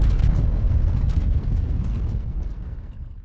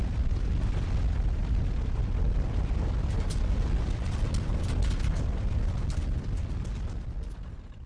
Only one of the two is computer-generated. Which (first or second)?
first